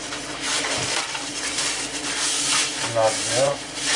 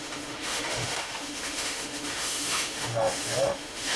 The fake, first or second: second